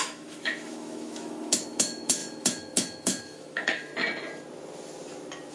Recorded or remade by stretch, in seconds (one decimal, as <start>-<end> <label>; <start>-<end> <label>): 0.0-3.9 remade; 3.9-5.5 recorded